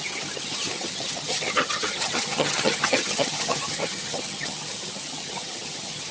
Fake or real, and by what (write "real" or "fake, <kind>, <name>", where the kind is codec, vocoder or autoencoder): fake, vocoder, HiFi-GAN